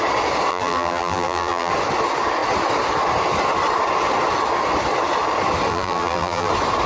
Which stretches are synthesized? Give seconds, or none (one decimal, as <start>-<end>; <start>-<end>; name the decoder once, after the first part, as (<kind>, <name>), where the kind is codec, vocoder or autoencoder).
0.5-1.7 (vocoder, BigVGAN v2); 5.7-6.5